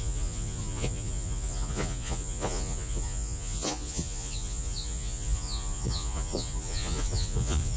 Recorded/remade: remade